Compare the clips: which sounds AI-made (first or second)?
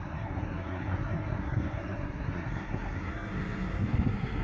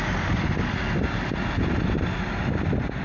first